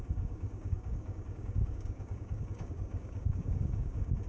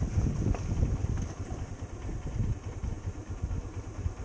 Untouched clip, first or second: second